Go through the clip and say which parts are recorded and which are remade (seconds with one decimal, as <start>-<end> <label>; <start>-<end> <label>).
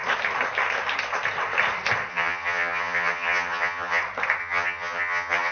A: 0.0-2.1 recorded; 2.1-4.0 remade; 4.0-4.4 recorded; 4.4-5.5 remade